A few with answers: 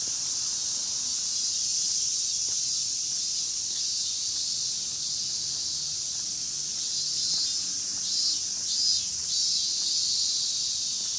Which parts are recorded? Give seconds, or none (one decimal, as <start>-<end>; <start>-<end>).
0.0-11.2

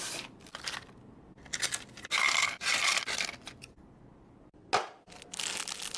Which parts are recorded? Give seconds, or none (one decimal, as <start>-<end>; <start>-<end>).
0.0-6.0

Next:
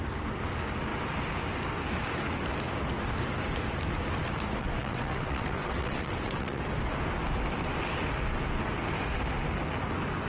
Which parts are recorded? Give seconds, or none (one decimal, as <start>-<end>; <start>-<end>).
0.0-4.6; 6.6-10.3

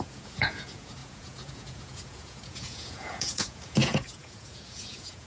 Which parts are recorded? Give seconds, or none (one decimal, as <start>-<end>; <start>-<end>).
none

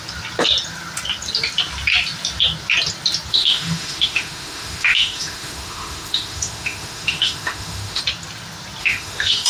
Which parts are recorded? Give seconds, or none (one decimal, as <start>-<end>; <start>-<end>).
0.0-3.3; 8.0-8.8

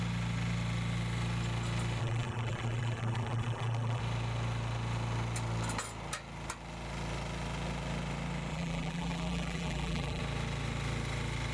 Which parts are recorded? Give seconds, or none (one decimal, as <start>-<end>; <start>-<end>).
0.0-2.0; 4.0-8.5; 10.2-11.5

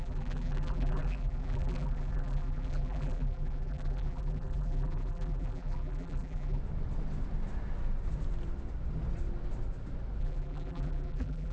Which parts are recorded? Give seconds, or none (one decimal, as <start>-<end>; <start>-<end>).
6.6-10.2